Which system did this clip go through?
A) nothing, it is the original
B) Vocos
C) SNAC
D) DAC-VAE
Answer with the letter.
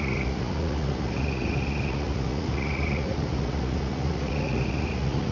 B